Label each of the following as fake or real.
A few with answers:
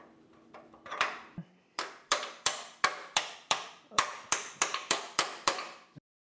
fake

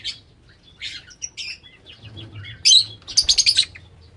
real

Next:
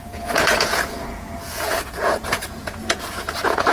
fake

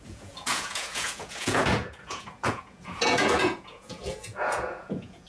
fake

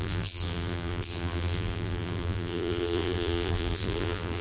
fake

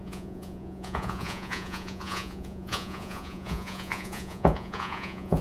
fake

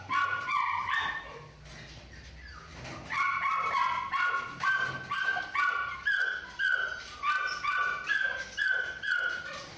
real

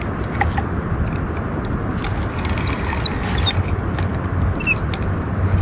real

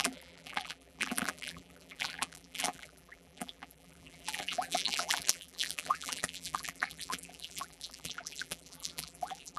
fake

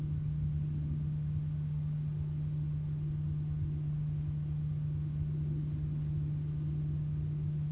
real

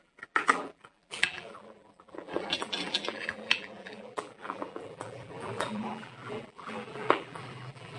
fake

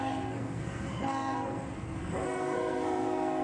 fake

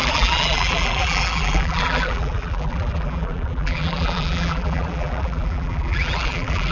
fake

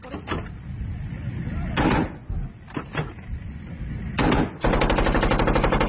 real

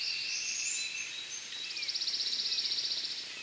real